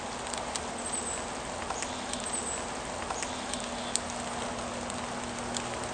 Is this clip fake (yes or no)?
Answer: no